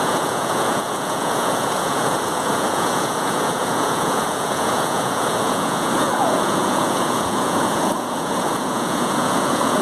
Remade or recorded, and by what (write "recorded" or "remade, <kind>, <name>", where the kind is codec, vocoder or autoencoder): remade, vocoder, Vocos